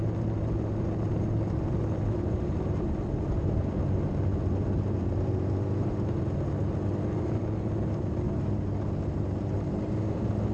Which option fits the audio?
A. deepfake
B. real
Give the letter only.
B